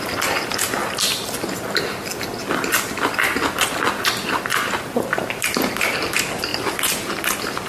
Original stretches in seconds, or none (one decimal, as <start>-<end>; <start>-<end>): 0.0-7.7